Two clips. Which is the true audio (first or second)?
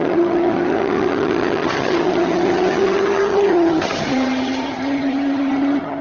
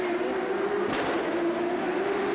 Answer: second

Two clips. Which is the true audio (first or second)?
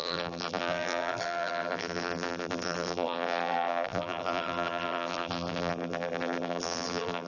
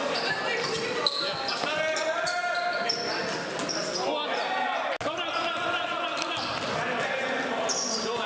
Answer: second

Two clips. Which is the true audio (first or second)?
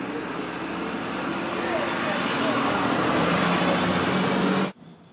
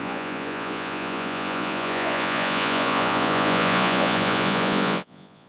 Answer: first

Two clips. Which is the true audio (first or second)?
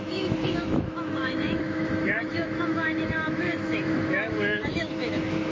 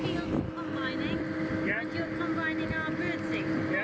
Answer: second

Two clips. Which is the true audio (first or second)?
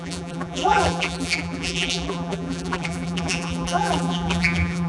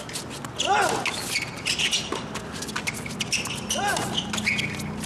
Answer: second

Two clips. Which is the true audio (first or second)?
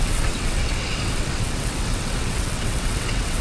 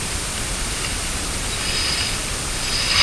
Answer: second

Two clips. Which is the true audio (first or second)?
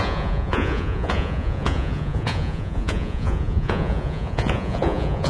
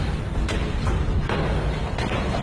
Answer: second